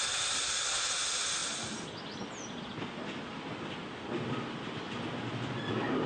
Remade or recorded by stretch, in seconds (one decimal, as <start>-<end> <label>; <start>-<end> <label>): 0.0-6.1 recorded

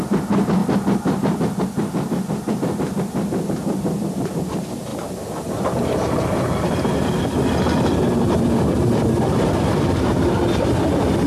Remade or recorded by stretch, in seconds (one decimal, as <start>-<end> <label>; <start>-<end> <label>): 0.0-11.3 recorded

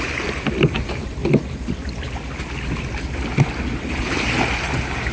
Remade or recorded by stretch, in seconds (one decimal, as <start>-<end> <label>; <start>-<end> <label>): 0.0-1.2 remade; 1.2-3.9 recorded; 3.9-5.1 remade

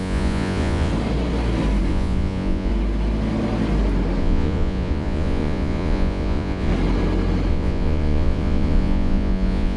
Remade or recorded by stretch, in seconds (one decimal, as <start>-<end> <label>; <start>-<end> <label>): 0.0-0.9 remade; 0.9-1.9 recorded; 1.9-2.7 remade; 2.7-4.2 recorded; 4.2-6.7 remade; 6.7-7.5 recorded; 7.5-9.8 remade